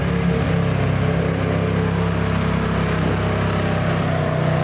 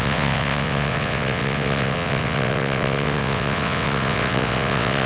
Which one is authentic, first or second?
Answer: first